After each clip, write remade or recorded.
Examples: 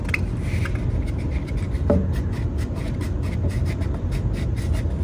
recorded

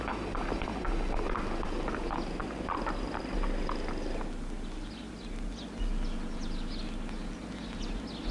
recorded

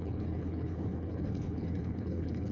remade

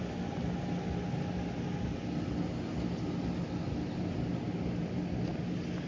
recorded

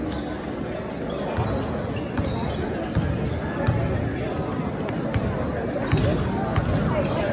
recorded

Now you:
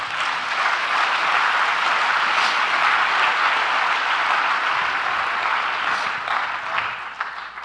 recorded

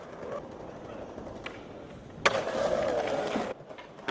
recorded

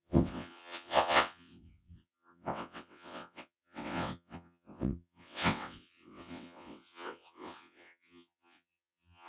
remade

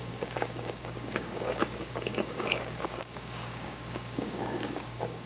remade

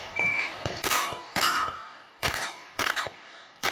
remade